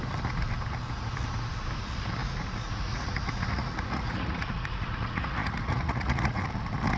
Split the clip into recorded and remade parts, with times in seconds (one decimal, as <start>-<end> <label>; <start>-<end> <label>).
0.0-2.2 recorded; 2.2-6.4 remade; 6.4-7.0 recorded